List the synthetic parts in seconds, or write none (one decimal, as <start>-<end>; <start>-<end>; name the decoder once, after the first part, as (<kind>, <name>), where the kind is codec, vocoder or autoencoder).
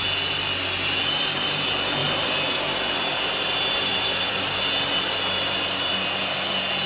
2.0-4.6 (vocoder, BigVGAN v2)